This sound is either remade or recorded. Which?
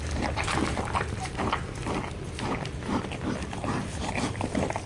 recorded